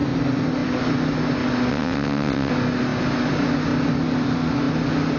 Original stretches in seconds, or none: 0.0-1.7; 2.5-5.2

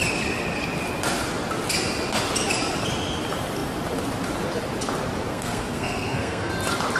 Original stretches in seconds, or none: 0.0-5.3; 6.5-7.0

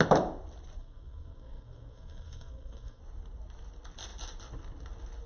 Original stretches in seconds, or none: 0.0-0.8; 3.0-5.3

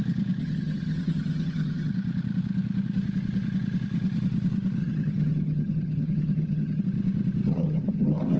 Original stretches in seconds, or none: 0.0-0.4; 1.9-4.8; 6.8-7.5

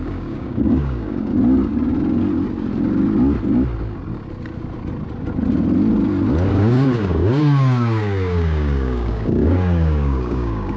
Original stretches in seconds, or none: 1.3-6.5

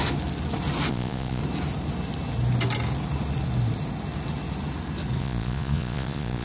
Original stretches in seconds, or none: 0.0-0.9; 1.4-5.2

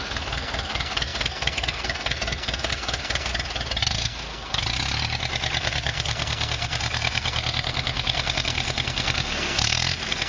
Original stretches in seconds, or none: 3.3-3.8; 4.6-5.6